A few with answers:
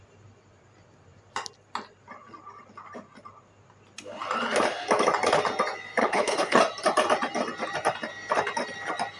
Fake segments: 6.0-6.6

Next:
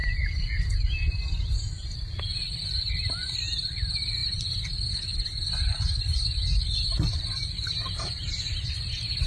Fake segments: none

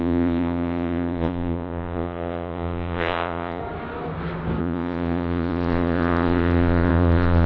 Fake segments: 0.0-3.6; 4.6-7.5

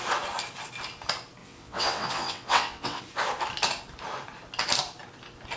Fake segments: 1.4-3.0

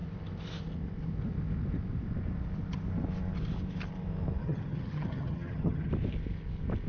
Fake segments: 4.4-5.9

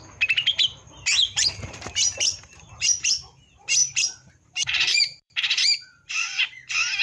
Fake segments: 0.7-2.8; 3.8-6.4

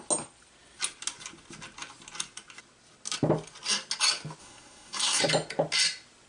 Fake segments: 4.4-5.2

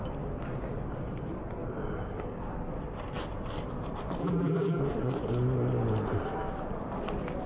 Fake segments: 4.2-4.8